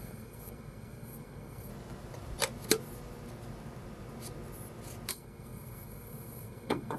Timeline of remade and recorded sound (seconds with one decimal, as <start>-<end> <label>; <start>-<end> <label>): 0.0-1.7 remade; 1.7-5.1 recorded; 5.1-7.0 remade